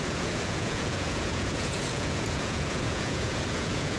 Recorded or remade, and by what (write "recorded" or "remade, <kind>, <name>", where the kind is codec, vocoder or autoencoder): remade, vocoder, Vocos